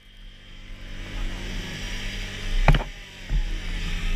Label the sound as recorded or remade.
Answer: recorded